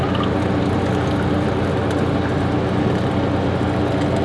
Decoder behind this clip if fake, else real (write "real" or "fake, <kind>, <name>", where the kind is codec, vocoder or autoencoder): real